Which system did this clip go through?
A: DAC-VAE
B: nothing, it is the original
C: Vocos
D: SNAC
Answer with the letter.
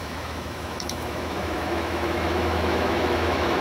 A